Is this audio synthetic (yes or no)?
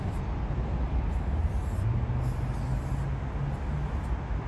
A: no